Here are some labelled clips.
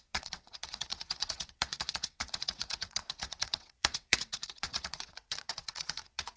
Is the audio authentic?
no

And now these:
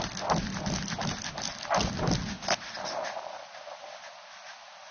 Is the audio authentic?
yes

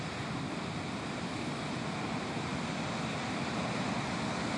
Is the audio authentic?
yes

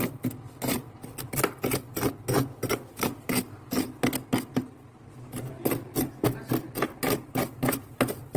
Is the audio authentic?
yes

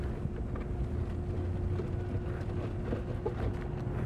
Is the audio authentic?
yes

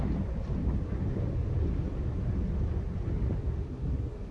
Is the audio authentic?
yes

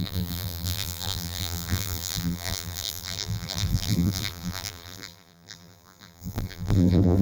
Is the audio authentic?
no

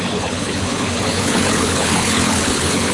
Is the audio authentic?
no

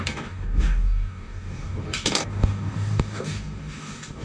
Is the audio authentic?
no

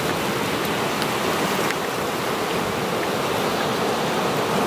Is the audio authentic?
yes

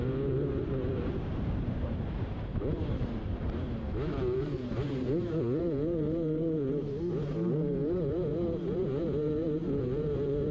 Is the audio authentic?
no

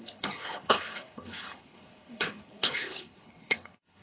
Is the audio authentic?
no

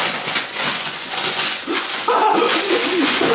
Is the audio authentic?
no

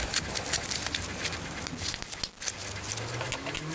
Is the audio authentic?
yes